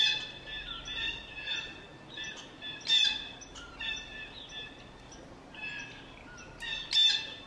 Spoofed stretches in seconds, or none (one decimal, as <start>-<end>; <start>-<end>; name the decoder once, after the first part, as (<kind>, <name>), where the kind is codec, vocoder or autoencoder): none